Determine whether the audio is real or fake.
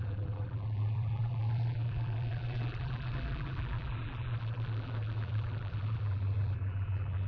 fake